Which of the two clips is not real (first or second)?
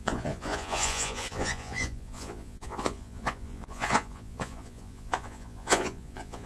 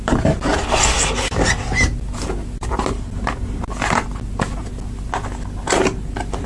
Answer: first